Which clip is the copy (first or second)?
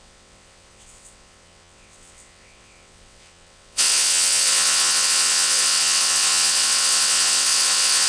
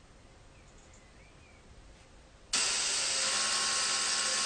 first